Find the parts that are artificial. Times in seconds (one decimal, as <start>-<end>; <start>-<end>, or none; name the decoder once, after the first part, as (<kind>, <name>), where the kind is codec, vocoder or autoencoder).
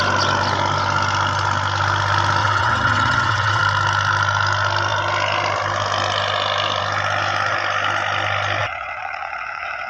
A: 2.4-3.6 (vocoder, WaveNeXt); 8.6-9.9